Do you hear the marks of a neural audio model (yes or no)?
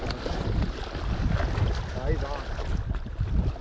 no